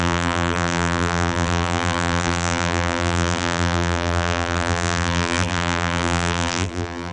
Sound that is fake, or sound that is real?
fake